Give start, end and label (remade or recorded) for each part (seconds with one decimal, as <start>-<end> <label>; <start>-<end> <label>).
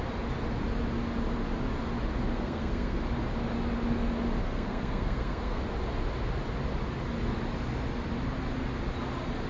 0.0-2.3 recorded; 2.3-3.0 remade; 3.0-4.4 recorded; 4.4-5.6 remade; 5.6-9.5 recorded